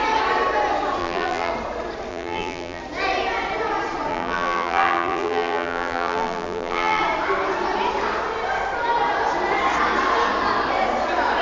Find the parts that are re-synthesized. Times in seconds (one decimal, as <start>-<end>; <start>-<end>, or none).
1.0-1.5; 2.1-2.8; 4.1-7.0